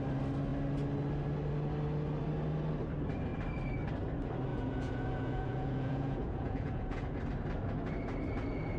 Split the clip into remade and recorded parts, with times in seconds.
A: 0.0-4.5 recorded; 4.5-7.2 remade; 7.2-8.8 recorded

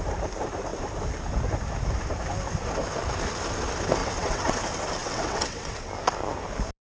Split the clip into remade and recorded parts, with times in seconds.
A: 0.0-4.0 recorded; 4.0-4.6 remade; 4.6-5.0 recorded; 5.0-5.9 remade; 5.9-6.9 recorded

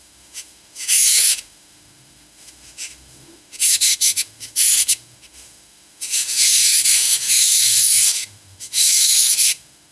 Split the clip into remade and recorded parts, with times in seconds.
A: 0.0-9.9 remade

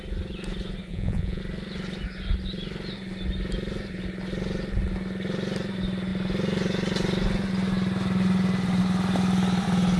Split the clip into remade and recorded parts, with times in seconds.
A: 0.0-0.9 recorded; 0.9-1.4 remade; 1.4-10.0 recorded

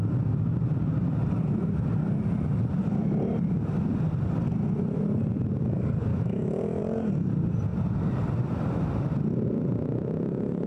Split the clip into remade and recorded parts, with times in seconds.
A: 0.0-6.1 recorded; 6.1-6.8 remade; 6.8-10.7 recorded